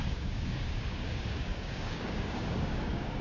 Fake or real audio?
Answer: fake